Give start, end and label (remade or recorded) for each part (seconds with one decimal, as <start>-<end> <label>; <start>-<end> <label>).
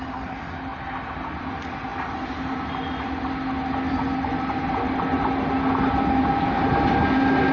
0.0-7.5 recorded